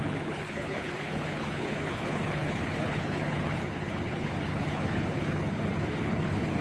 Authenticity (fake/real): fake